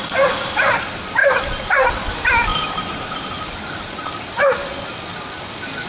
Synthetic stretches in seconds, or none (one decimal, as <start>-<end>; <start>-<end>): 1.2-1.9; 2.5-4.1